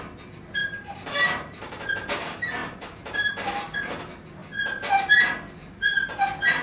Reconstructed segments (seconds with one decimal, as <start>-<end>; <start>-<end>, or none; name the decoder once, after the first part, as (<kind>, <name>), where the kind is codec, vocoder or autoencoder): 0.6-1.8 (vocoder, BigVGAN v2)